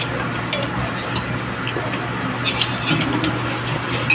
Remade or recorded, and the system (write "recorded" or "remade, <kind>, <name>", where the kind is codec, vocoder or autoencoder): recorded